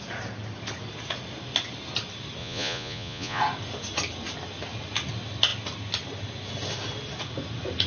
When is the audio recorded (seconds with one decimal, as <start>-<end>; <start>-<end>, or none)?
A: 0.0-2.4; 3.4-7.9